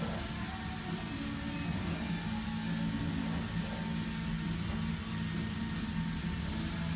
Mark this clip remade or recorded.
recorded